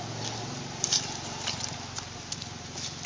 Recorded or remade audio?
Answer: recorded